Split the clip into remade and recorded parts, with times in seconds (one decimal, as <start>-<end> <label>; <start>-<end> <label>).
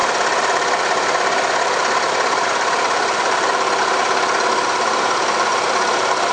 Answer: 0.0-6.3 remade